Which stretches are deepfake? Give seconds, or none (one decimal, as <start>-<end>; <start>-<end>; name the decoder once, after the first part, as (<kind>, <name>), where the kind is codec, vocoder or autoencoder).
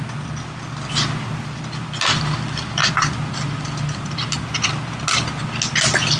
2.8-4.4 (vocoder, BigVGAN v2)